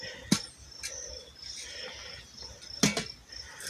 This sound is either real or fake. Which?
real